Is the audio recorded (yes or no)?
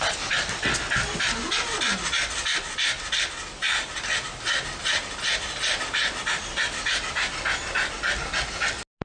yes